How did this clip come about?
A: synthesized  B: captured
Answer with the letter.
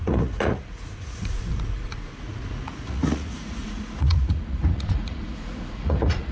A